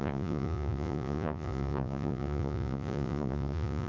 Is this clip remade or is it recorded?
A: remade